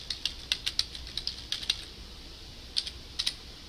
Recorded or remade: recorded